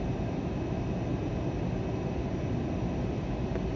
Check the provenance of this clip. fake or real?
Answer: real